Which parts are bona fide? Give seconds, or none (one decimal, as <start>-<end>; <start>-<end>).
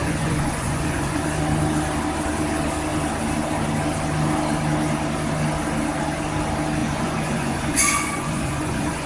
1.2-6.8